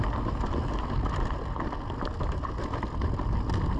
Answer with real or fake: real